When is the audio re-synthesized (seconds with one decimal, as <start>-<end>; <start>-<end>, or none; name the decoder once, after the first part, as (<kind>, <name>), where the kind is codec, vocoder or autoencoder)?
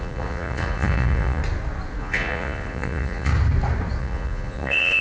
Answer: 0.0-1.4 (vocoder, Vocos); 2.0-3.3; 4.0-5.0